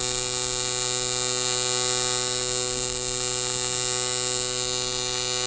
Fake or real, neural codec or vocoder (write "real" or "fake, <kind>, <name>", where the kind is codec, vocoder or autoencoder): real